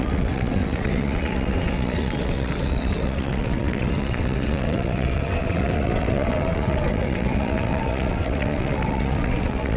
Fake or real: fake